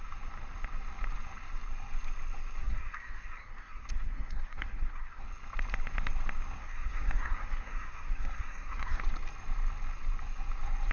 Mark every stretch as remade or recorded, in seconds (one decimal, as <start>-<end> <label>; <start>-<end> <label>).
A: 0.0-2.6 recorded; 2.6-5.2 remade; 5.2-6.6 recorded; 6.6-9.0 remade; 9.0-10.9 recorded